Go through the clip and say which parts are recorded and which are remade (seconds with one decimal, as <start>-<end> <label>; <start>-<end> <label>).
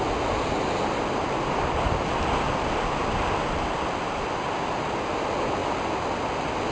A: 0.0-6.7 recorded